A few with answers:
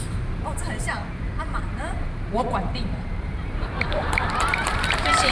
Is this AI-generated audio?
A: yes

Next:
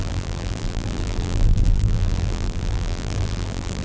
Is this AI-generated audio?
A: yes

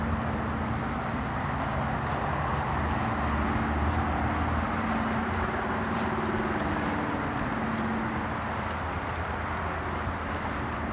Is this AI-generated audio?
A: no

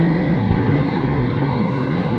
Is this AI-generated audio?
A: yes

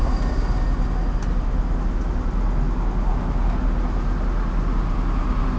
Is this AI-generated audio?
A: no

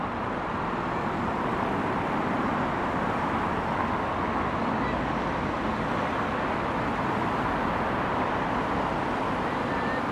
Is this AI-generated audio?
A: no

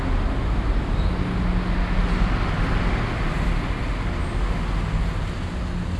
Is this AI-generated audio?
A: no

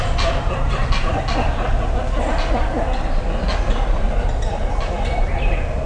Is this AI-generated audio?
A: no